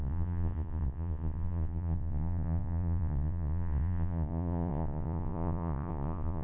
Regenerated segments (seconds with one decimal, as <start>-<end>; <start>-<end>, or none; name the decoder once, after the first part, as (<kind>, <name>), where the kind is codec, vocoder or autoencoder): 0.0-6.4 (vocoder, Vocos)